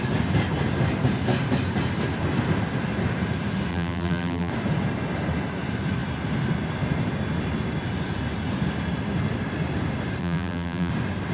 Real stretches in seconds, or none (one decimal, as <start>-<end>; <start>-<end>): 0.0-3.7; 4.5-10.2; 10.9-11.3